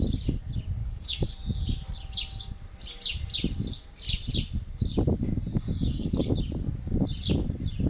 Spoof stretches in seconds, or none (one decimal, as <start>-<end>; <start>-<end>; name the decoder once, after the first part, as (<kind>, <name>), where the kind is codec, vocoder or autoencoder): 0.8-1.3 (codec, DAC); 5.5-6.3